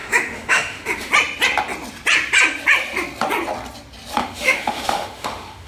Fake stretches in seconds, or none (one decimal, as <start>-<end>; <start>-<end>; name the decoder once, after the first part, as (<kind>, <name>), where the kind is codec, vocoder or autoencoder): 0.0-1.1 (autoencoder, DAC-VAE); 4.2-5.7